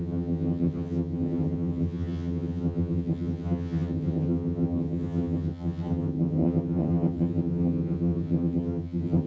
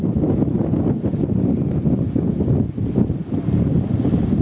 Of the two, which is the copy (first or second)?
first